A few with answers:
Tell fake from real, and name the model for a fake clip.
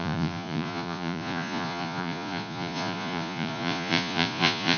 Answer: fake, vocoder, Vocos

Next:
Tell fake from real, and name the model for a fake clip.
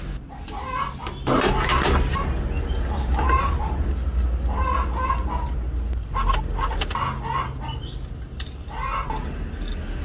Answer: real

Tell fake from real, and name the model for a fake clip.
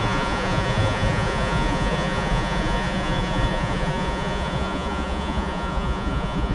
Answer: fake, vocoder, Vocos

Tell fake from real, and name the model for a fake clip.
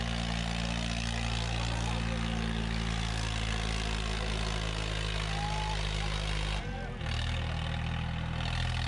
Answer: real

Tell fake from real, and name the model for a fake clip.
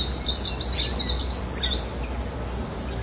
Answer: real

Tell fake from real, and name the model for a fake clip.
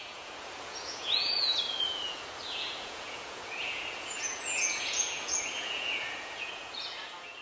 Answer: fake, vocoder, Vocos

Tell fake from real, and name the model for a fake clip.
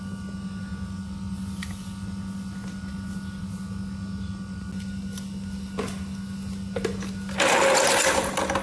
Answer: real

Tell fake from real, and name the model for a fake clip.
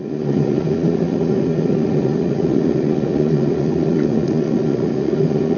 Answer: fake, vocoder, Vocos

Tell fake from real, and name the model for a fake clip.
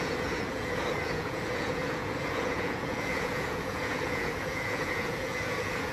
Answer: fake, vocoder, Vocos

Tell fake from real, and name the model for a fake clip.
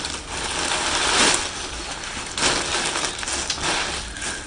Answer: real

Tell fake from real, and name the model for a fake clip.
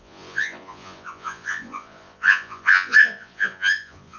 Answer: fake, vocoder, Vocos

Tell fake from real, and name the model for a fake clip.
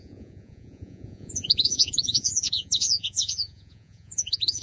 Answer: fake, vocoder, Vocos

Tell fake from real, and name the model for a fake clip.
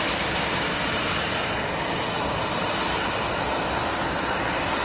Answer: real